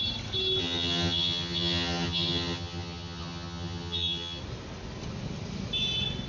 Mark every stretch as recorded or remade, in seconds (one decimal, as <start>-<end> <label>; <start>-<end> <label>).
0.0-0.6 recorded; 0.6-4.4 remade; 4.4-6.3 recorded